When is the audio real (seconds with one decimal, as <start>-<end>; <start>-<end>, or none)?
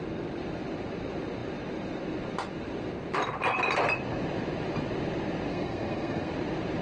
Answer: 0.0-5.5; 6.3-6.8